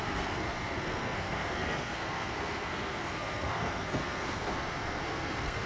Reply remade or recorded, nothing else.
remade